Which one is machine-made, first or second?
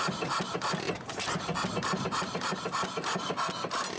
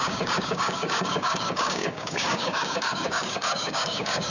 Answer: second